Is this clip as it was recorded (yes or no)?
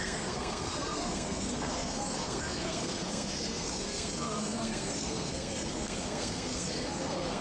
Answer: no